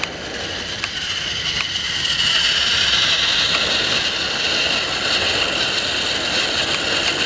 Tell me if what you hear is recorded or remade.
recorded